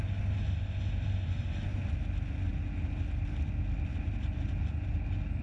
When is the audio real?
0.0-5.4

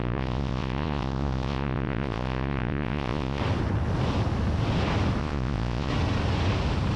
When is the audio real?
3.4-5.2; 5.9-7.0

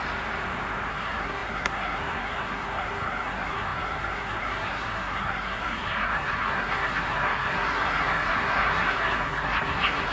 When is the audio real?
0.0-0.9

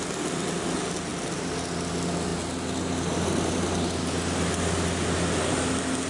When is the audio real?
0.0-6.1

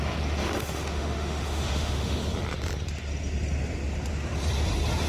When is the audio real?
0.0-0.4; 2.2-5.1

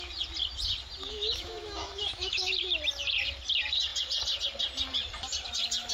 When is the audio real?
0.0-1.1; 2.5-5.9